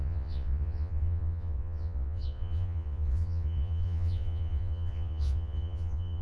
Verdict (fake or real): fake